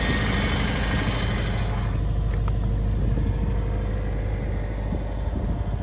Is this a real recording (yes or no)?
yes